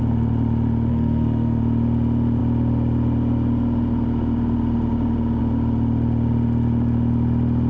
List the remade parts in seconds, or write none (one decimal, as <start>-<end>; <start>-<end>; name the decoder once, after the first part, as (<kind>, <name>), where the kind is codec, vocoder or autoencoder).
0.9-1.6 (codec, SNAC)